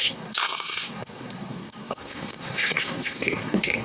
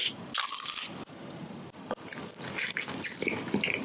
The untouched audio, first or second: second